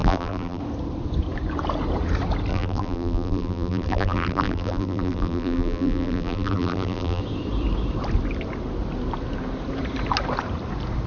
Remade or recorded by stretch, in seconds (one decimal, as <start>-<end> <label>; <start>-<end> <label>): 0.0-0.6 remade; 0.6-2.5 recorded; 2.5-7.2 remade; 7.2-11.1 recorded